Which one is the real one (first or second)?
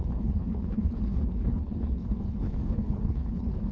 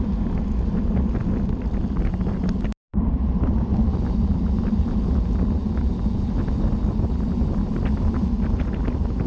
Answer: second